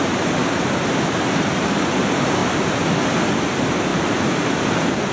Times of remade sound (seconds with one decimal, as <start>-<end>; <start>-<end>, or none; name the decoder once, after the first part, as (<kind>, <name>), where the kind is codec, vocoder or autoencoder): 0.0-0.4 (vocoder, BigVGAN v2); 2.0-2.4; 3.4-5.1

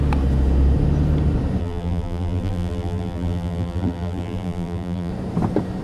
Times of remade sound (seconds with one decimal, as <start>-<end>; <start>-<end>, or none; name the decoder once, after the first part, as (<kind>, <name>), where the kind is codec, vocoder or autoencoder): 1.6-5.1 (vocoder, BigVGAN v2)

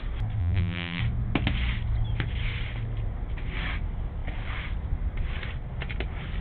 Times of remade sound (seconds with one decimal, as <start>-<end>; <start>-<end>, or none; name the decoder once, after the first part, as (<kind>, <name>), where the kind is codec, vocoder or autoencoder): 0.4-1.0 (vocoder, BigVGAN v2)

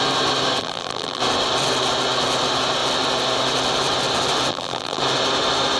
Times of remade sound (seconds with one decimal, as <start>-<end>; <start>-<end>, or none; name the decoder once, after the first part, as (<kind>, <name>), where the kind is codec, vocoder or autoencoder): 0.6-1.2 (vocoder, BigVGAN v2); 4.5-5.0

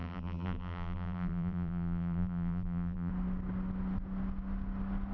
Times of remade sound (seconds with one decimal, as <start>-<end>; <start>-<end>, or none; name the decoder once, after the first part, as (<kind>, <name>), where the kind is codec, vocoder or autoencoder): 0.0-3.1 (vocoder, BigVGAN v2)

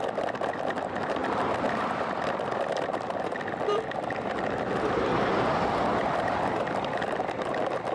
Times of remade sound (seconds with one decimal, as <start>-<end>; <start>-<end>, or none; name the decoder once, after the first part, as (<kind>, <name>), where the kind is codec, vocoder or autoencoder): 1.2-4.7 (vocoder, BigVGAN v2); 6.0-7.4

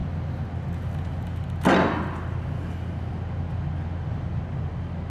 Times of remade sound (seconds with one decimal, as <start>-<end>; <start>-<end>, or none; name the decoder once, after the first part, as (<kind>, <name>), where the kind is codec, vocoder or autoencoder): none

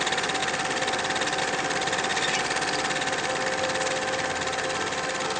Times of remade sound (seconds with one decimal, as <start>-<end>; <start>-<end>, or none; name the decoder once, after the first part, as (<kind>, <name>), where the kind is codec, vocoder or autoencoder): none